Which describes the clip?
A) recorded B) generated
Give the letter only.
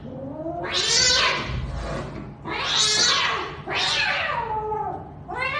A